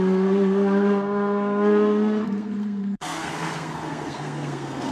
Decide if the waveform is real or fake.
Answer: fake